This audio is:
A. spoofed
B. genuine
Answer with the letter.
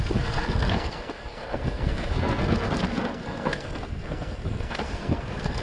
A